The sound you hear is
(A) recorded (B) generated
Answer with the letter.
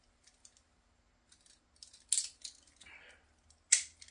A